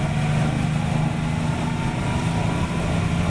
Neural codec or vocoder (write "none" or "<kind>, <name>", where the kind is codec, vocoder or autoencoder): none